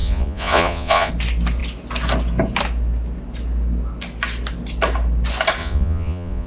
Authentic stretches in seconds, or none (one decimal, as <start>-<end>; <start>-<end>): 1.1-5.6